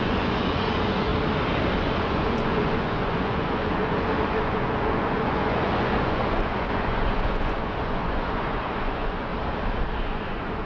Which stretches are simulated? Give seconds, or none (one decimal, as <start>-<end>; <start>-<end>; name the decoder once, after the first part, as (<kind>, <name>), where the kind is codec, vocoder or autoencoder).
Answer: 0.0-1.1 (vocoder, Vocos); 1.8-9.3; 10.0-10.7